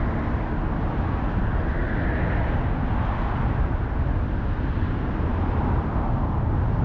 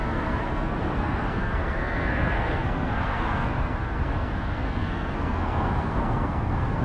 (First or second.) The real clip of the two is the first